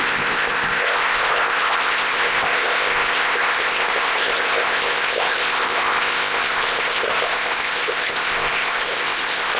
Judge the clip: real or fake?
fake